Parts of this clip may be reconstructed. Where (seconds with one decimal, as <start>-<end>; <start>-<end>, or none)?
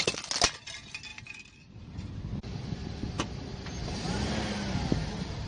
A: none